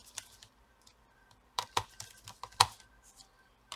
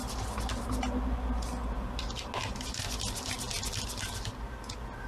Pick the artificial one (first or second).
first